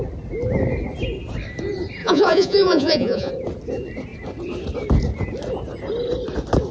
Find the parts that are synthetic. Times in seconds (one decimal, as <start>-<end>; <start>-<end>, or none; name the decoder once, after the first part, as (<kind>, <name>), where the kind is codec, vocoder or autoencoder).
2.0-3.3 (vocoder, Vocos)